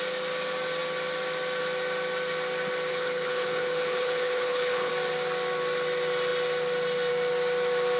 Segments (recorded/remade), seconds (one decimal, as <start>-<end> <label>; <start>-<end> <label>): 0.0-2.9 recorded; 2.9-4.9 remade; 4.9-8.0 recorded